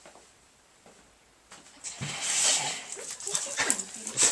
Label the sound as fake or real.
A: real